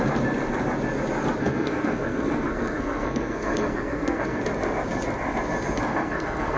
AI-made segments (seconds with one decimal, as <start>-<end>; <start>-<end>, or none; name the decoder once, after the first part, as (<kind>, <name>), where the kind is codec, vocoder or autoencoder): 1.4-4.4 (codec, SNAC); 5.9-6.6